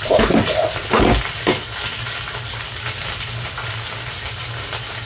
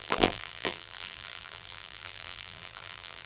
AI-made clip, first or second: second